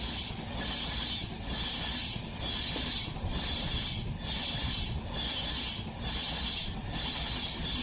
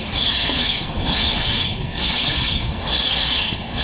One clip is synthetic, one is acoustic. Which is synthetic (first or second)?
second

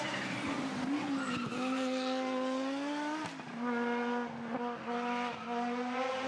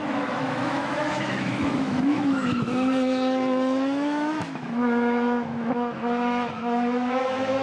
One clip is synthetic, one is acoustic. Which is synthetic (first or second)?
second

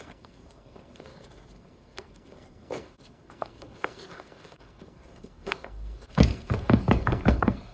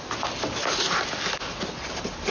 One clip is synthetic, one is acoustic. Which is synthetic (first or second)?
first